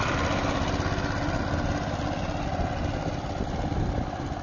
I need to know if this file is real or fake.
real